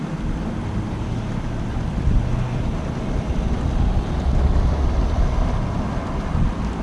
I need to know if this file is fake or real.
real